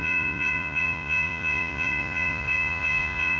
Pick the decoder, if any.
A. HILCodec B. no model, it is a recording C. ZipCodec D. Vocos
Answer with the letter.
D